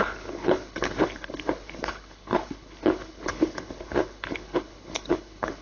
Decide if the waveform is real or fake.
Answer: fake